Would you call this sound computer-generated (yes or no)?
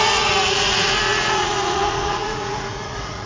yes